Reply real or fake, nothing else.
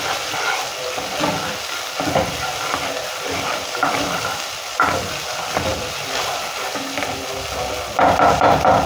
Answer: real